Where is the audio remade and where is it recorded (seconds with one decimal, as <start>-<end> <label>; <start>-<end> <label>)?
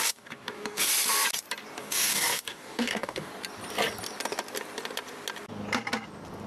0.0-0.9 remade; 0.9-1.8 recorded; 1.8-3.3 remade; 3.3-6.5 recorded